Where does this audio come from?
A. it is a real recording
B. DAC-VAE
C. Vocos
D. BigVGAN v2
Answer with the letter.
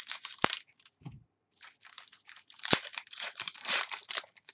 D